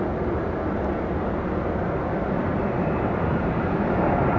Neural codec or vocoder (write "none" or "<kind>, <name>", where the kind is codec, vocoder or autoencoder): none